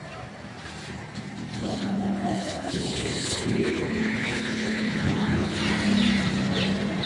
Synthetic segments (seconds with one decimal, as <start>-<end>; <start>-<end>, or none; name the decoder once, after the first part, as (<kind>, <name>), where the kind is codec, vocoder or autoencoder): 1.6-5.6 (codec, HILCodec)